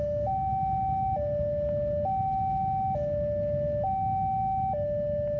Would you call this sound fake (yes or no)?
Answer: no